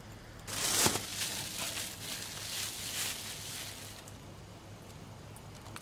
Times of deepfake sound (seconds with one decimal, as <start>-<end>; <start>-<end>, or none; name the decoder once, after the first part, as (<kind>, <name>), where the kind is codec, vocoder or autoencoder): none